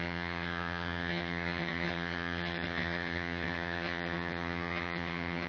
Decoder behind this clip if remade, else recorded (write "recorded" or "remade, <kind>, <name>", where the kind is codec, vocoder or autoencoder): remade, vocoder, HiFi-GAN